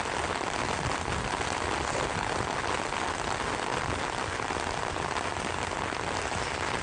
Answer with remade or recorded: recorded